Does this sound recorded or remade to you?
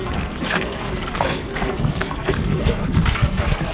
remade